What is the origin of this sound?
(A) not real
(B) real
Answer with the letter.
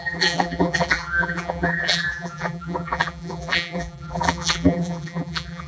A